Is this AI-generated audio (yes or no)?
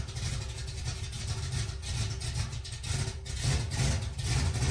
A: no